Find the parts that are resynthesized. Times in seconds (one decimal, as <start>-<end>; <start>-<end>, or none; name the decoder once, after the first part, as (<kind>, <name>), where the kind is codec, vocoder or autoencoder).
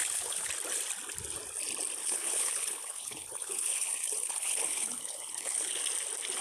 0.0-0.5 (codec, HILCodec); 2.0-5.8